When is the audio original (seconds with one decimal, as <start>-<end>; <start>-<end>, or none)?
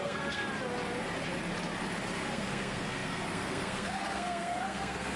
0.4-2.3